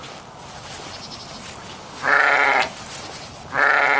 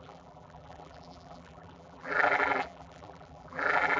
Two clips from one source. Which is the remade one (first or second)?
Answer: second